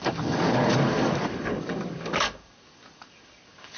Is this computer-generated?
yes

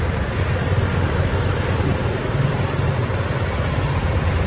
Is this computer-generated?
no